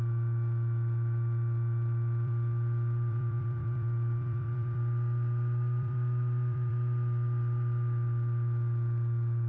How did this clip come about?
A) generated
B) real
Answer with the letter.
A